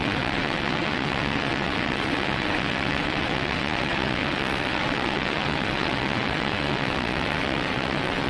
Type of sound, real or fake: fake